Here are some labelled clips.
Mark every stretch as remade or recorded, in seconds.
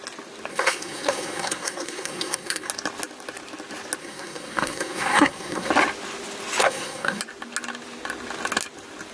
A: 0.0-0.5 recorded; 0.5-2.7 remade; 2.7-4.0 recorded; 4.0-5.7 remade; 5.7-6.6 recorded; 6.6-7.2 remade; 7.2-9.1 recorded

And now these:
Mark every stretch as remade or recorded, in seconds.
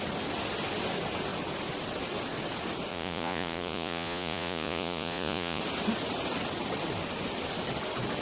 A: 0.0-2.9 recorded; 2.9-5.6 remade; 5.6-8.2 recorded